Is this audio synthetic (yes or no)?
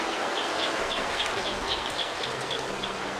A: yes